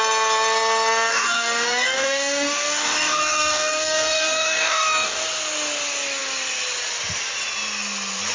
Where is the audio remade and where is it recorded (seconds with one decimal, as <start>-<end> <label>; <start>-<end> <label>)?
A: 0.0-1.1 recorded; 1.1-5.2 remade; 5.2-8.3 recorded